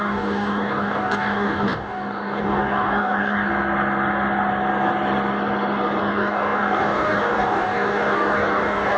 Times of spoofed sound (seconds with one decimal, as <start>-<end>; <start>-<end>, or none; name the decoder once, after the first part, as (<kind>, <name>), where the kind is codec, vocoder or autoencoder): 0.0-3.5 (codec, DAC); 6.0-9.0